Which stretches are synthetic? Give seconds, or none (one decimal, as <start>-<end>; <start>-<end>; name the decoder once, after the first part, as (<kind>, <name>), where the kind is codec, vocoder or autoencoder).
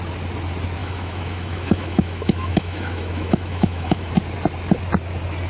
0.8-4.1 (autoencoder, DAC-VAE)